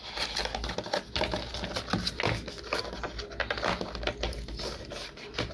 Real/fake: real